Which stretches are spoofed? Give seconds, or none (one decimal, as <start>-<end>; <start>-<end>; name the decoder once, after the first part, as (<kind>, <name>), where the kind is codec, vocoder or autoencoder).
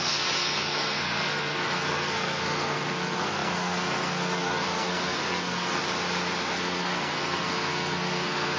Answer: 0.0-5.8 (codec, SNAC); 6.5-8.6